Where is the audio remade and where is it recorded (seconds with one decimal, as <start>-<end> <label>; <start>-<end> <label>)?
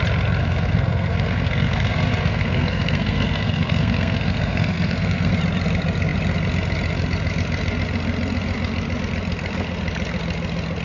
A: 0.0-0.4 recorded; 0.4-5.3 remade; 5.3-10.8 recorded